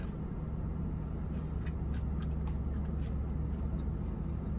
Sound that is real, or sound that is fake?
real